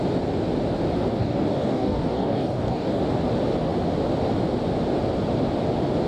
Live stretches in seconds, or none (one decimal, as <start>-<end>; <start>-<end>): 0.0-1.2; 3.0-6.1